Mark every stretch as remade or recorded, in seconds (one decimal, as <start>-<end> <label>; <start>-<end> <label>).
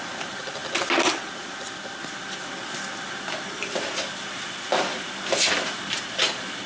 0.0-6.7 recorded